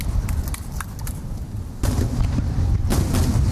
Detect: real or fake fake